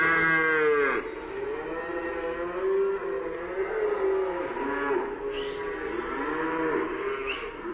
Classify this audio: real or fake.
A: real